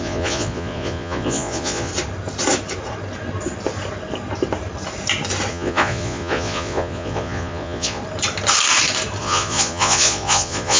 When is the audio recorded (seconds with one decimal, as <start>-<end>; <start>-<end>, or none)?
1.9-5.5; 8.0-9.2